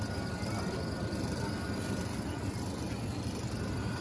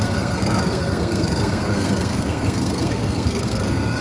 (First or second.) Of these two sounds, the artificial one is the second